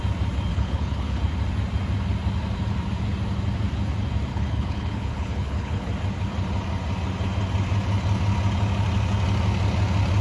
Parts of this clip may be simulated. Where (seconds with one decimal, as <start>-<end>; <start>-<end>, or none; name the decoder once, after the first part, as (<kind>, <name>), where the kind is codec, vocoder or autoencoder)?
0.5-1.2 (codec, HILCodec); 4.3-5.9